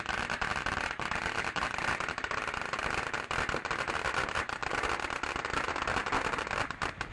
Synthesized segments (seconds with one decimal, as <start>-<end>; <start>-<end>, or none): 0.0-4.6